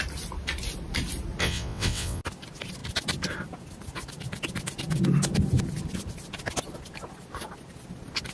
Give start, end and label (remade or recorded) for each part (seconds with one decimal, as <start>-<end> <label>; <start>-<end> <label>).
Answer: 0.0-1.4 recorded; 1.4-2.2 remade; 2.2-8.3 recorded

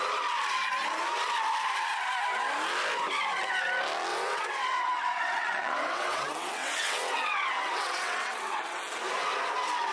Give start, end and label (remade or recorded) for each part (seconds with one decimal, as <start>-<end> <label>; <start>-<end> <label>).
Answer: 0.0-4.1 recorded; 4.1-8.8 remade; 8.8-9.9 recorded

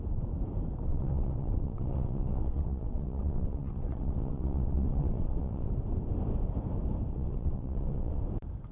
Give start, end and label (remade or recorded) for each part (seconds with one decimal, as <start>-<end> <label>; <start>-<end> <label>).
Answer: 0.0-0.9 recorded; 0.9-5.7 remade; 5.7-7.1 recorded; 7.1-8.2 remade; 8.2-8.7 recorded

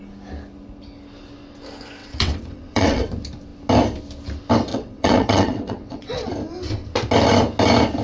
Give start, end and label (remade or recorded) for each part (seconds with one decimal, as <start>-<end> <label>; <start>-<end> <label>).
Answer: 0.0-2.0 recorded; 2.0-3.1 remade; 3.1-4.7 recorded; 4.7-6.3 remade; 6.3-8.0 recorded

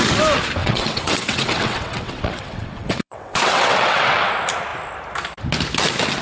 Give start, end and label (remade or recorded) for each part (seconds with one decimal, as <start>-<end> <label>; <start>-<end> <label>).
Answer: 0.0-0.6 recorded; 0.6-4.3 remade; 4.3-6.2 recorded

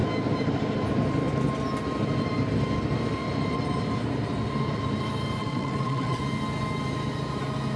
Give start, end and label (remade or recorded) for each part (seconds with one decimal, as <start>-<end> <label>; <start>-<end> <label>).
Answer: 0.0-5.4 recorded; 5.4-6.2 remade; 6.2-7.8 recorded

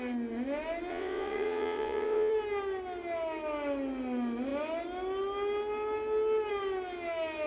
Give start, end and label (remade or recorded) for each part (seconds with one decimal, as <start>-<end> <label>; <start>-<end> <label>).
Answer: 0.0-0.9 recorded; 0.9-2.3 remade; 2.3-7.5 recorded

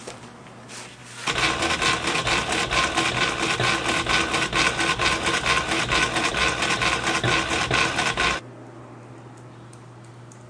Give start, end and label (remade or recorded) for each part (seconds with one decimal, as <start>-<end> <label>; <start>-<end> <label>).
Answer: 0.0-10.5 recorded